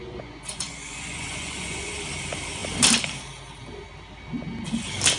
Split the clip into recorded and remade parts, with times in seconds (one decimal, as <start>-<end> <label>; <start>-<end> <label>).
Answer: 0.0-2.0 remade; 2.0-5.2 recorded